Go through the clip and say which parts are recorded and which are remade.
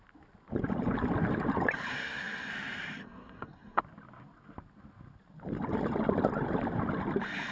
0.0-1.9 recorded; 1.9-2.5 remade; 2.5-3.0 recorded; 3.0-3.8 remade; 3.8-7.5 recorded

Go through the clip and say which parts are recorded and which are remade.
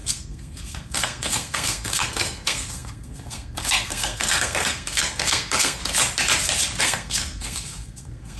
0.0-5.8 remade; 5.8-6.8 recorded; 6.8-8.4 remade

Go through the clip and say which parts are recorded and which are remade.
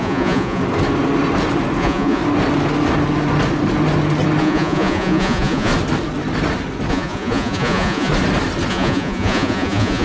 0.0-0.6 remade; 0.6-1.8 recorded; 1.8-2.2 remade; 2.2-4.4 recorded; 4.4-5.7 remade; 5.7-6.9 recorded; 6.9-8.1 remade; 8.1-8.7 recorded; 8.7-10.0 remade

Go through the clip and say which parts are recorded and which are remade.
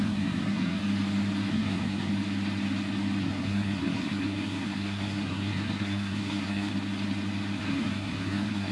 0.0-0.8 remade; 0.8-1.5 recorded; 1.5-2.1 remade; 2.1-3.2 recorded; 3.2-6.7 remade; 6.7-7.6 recorded; 7.6-8.7 remade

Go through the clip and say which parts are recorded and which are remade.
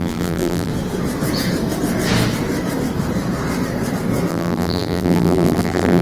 0.0-0.7 remade; 0.7-4.3 recorded; 4.3-6.0 remade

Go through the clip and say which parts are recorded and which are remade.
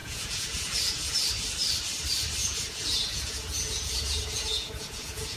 0.0-1.1 remade; 1.1-2.4 recorded; 2.4-5.4 remade